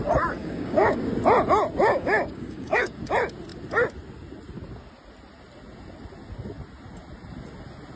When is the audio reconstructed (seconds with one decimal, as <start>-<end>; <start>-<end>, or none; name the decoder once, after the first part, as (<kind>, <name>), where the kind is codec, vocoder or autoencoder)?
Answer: 0.4-1.1 (codec, DAC); 1.8-3.0